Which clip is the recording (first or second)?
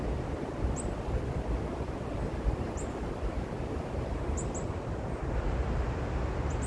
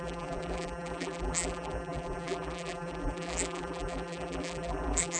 first